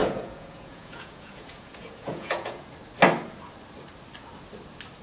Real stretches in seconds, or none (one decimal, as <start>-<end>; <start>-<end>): 2.7-5.0